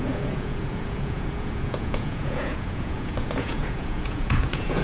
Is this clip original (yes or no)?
no